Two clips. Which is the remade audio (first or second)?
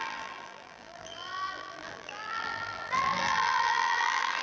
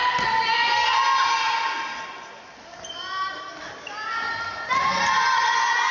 first